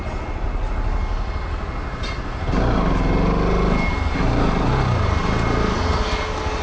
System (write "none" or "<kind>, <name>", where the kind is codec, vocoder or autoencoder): none